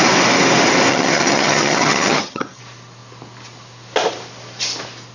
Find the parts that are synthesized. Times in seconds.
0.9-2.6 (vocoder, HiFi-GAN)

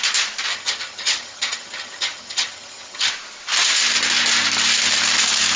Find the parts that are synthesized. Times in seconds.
0.5-3.1 (vocoder, HiFi-GAN)

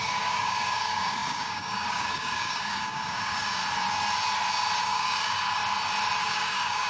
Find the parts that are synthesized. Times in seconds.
0.0-3.6 (codec, DAC); 4.8-5.6; 6.2-6.9

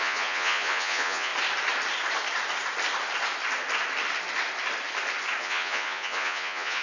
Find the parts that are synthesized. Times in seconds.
0.0-1.3 (vocoder, Vocos); 5.4-6.8

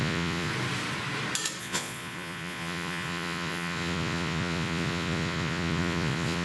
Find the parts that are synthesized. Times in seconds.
0.0-0.5 (vocoder, Vocos); 1.6-6.4